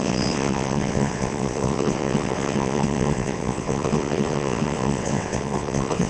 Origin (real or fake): fake